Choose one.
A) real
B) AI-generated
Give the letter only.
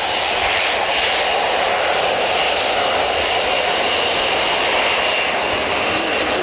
A